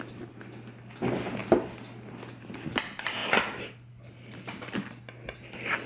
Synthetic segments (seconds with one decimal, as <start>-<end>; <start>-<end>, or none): none